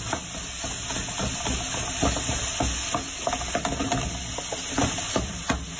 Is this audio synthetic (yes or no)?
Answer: no